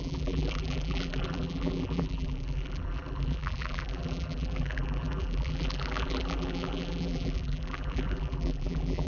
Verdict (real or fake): fake